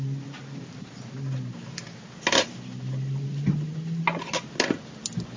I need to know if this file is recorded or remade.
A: recorded